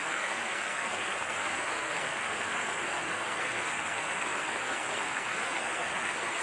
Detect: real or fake fake